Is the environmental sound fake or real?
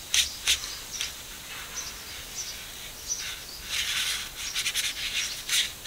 real